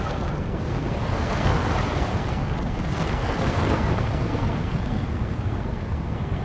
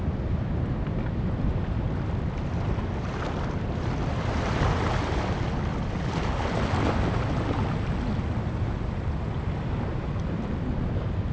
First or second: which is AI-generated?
first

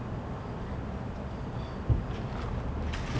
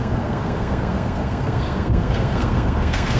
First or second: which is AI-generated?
second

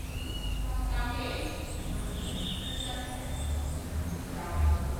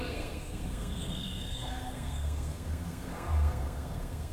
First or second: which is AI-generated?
second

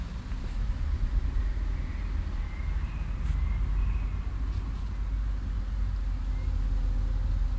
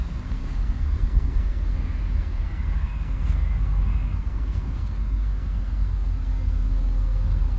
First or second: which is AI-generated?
second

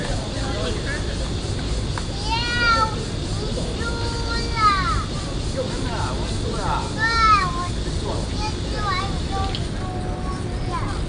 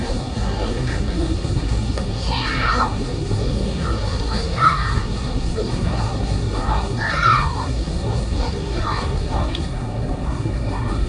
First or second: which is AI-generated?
second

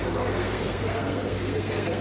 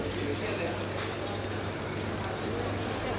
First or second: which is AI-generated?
first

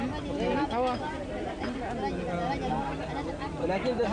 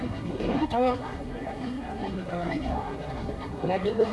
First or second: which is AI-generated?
second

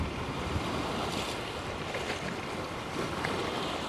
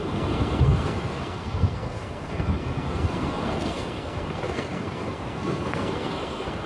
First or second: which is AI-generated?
second